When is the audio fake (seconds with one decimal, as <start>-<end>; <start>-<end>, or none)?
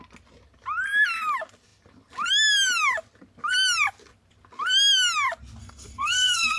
5.6-6.6